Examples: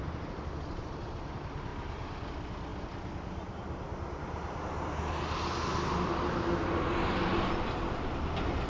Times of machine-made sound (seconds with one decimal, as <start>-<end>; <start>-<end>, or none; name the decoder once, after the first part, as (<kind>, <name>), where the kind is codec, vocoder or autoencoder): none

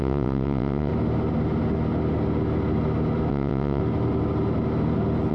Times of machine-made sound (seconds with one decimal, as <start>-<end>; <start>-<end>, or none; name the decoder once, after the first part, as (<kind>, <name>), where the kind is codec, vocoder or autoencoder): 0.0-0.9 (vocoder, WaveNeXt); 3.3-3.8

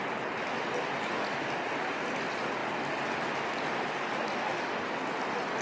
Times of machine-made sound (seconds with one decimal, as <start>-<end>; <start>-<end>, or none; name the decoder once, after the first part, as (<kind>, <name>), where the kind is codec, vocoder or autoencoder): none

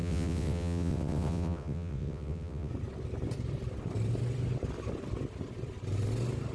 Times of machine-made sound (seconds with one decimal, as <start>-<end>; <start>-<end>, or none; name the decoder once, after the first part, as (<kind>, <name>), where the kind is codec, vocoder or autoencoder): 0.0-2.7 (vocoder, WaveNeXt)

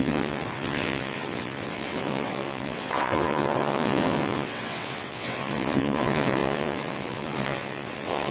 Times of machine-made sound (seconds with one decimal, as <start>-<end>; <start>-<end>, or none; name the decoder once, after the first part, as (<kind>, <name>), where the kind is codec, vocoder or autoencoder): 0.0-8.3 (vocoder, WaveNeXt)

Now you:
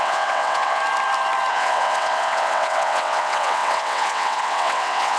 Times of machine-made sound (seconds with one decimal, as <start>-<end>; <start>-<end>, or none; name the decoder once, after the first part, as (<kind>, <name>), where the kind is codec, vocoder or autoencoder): 0.0-0.8 (vocoder, WaveNeXt); 1.5-5.2

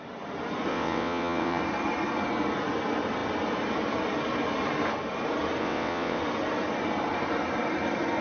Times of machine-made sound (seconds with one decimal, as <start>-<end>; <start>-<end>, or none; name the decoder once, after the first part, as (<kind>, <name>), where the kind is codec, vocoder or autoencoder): 0.7-1.6 (vocoder, WaveNeXt); 5.6-6.2

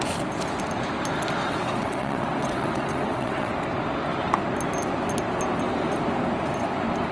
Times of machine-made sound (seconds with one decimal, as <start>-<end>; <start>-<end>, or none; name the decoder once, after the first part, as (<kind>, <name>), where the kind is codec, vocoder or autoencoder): 1.4-3.5 (vocoder, WaveNeXt)